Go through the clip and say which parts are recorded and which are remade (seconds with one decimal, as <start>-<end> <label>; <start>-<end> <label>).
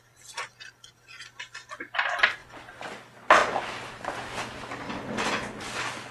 0.0-6.1 recorded